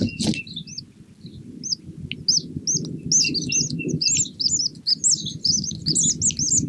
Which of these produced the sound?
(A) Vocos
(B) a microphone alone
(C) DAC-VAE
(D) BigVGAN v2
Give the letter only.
B